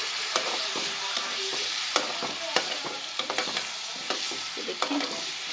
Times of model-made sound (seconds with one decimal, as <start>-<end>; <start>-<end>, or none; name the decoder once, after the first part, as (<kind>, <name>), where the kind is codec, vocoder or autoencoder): 0.0-3.3 (vocoder, BigVGAN v2)